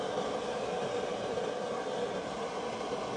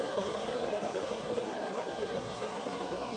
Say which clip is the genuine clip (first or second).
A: first